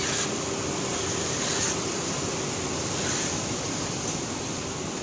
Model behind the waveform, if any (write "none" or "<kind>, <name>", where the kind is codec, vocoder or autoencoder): none